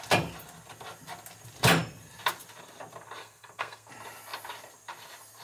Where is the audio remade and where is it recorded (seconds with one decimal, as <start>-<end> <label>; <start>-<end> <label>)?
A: 0.0-3.2 recorded; 3.2-3.9 remade; 3.9-5.4 recorded